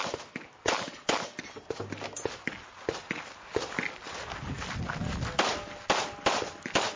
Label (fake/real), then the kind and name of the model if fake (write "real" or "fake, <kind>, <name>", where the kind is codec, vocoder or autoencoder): real